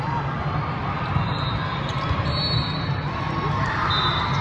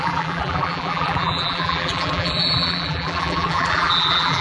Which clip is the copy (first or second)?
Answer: second